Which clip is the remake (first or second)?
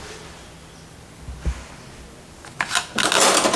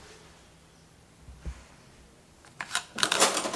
second